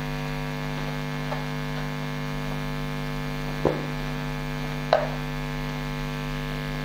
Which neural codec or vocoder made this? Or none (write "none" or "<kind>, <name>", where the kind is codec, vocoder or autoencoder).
none